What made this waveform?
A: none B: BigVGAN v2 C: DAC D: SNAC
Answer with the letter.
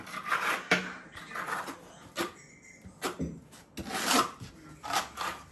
A